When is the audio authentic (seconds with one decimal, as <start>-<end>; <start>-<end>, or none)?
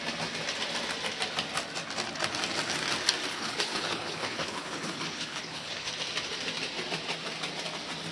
0.0-3.3; 5.9-8.1